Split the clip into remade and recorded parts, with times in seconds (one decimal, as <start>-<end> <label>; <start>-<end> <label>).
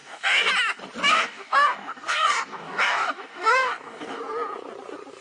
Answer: 0.0-0.5 remade; 0.5-1.1 recorded; 1.1-4.2 remade; 4.2-5.2 recorded